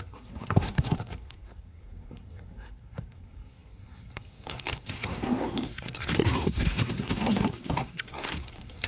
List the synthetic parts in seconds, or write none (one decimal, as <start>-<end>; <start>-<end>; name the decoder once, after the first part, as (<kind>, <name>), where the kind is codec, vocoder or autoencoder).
0.0-8.9 (codec, SNAC)